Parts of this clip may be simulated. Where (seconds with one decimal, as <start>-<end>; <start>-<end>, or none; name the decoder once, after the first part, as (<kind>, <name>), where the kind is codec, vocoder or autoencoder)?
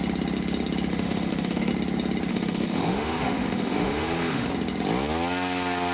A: 0.9-1.7 (autoencoder, DAC-VAE); 2.3-4.5